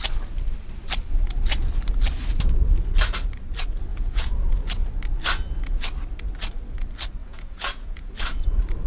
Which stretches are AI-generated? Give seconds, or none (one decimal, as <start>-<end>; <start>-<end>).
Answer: 3.9-4.5; 7.2-8.1